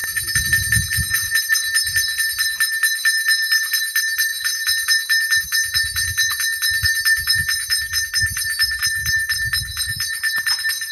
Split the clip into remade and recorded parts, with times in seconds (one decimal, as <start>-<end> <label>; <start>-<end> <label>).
0.0-1.4 remade; 1.4-4.3 recorded; 4.3-8.1 remade; 8.1-9.7 recorded; 9.7-10.2 remade; 10.2-10.9 recorded